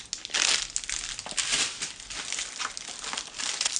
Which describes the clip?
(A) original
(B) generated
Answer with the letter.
A